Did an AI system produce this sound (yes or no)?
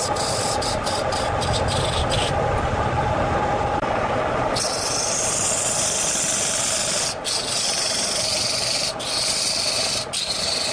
no